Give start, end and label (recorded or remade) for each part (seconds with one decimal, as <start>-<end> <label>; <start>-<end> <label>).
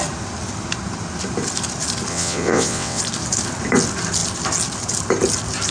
0.0-2.1 recorded; 2.1-3.0 remade; 3.0-5.7 recorded